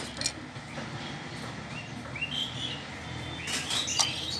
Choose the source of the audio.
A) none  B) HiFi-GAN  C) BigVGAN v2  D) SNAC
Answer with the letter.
A